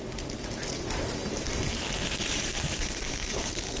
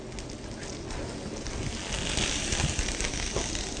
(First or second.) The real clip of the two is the second